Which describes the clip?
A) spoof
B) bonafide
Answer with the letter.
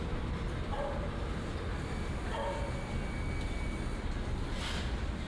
A